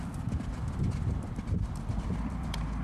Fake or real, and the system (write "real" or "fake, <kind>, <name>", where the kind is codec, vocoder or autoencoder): fake, vocoder, BigVGAN v2